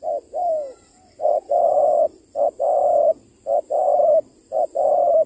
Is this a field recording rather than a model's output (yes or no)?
yes